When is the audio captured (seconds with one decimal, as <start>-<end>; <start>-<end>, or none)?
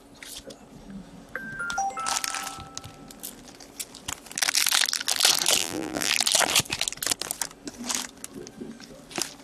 0.0-5.6; 6.1-9.4